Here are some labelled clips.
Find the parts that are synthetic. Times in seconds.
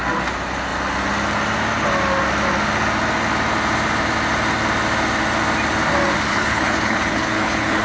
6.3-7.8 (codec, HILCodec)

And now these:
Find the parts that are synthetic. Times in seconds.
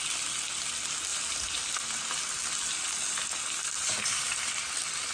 none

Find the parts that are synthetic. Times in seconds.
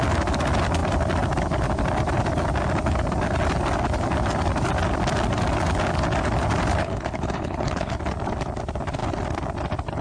6.8-8.0 (codec, HILCodec)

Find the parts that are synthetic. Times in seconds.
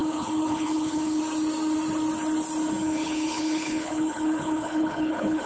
0.0-1.2 (codec, HILCodec); 2.8-5.5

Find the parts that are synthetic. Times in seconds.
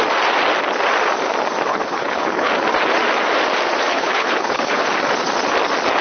1.7-2.5 (codec, HILCodec); 3.9-4.8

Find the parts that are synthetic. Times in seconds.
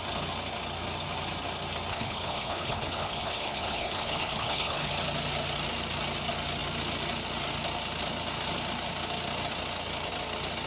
1.9-4.9 (codec, HILCodec)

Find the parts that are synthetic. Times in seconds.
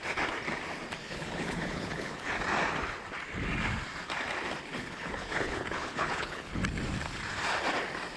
1.0-2.3 (codec, HILCodec); 4.7-6.6